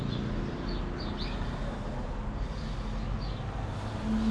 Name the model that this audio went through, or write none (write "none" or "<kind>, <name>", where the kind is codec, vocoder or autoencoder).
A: none